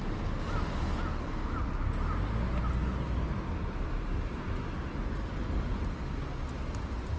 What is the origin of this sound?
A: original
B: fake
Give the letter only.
A